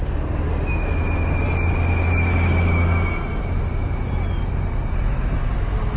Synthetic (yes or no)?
no